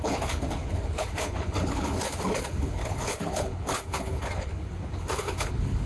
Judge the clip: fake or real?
fake